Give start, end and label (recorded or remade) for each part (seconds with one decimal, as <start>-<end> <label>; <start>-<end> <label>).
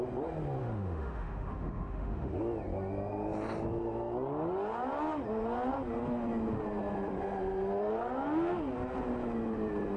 0.0-0.6 recorded; 0.6-2.4 remade; 2.4-10.0 recorded